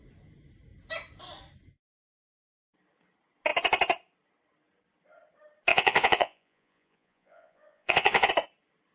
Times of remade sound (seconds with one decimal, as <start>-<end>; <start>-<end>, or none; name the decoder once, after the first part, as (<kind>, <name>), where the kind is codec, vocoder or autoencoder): 5.7-8.3 (vocoder, Vocos)